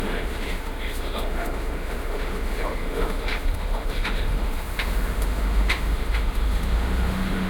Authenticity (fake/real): fake